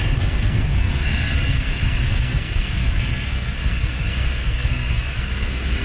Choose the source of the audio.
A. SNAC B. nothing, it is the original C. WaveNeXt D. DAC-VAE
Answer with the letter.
A